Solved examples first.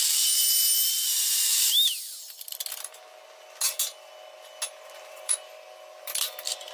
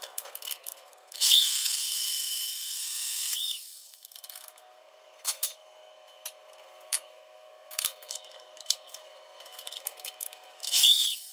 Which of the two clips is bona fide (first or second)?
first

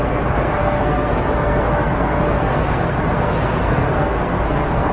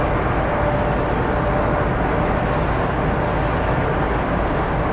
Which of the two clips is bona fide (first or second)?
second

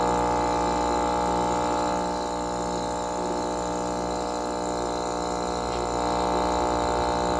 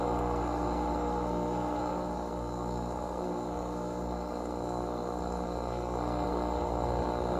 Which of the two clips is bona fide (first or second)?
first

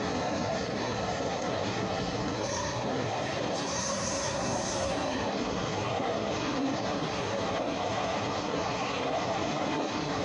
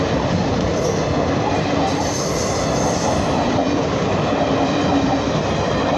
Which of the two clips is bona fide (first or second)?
second